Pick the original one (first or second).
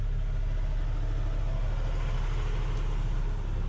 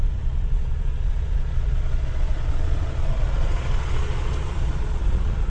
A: first